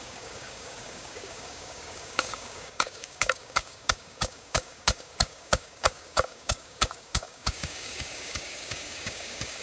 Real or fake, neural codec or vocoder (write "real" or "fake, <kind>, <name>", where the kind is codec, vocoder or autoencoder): fake, codec, DAC